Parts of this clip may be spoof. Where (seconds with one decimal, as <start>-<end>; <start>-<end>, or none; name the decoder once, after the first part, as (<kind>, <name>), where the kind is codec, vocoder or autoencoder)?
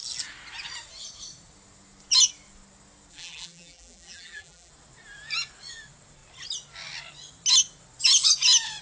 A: 3.1-4.7 (vocoder, BigVGAN v2)